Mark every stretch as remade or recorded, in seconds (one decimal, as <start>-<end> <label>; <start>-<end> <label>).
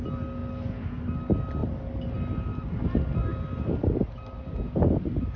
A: 0.0-0.4 recorded; 0.4-0.9 remade; 0.9-5.4 recorded